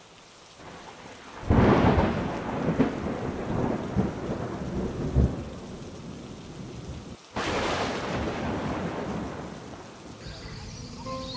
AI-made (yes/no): no